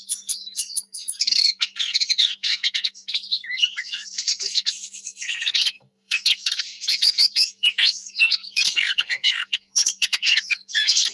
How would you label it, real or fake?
fake